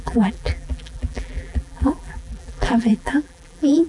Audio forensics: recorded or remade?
remade